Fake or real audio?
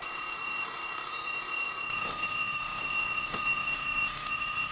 fake